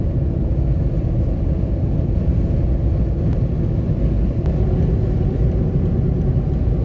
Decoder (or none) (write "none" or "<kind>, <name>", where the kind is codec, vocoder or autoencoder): none